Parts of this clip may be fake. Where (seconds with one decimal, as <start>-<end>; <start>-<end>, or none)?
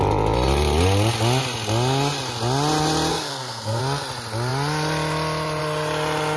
3.1-3.8